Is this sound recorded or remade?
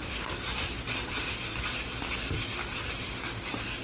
recorded